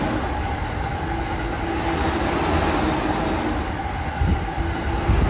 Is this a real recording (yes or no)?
yes